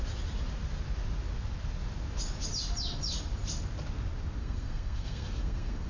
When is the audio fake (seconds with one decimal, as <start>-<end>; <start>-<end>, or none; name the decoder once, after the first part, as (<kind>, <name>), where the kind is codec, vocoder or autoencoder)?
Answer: 4.4-5.9 (codec, SNAC)